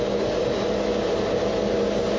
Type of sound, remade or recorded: recorded